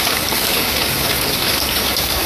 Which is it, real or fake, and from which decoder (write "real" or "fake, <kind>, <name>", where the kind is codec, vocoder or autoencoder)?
fake, codec, DAC